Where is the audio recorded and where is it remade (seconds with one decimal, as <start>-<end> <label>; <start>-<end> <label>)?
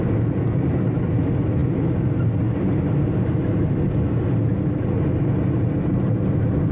0.0-6.7 recorded